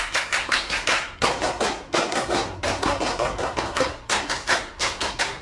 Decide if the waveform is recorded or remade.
remade